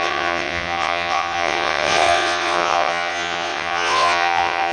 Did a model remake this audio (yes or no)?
yes